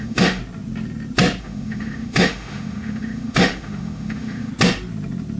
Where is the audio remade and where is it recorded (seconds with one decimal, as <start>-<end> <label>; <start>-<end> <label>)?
0.0-0.4 remade; 0.4-1.4 recorded; 1.4-4.5 remade; 4.5-5.4 recorded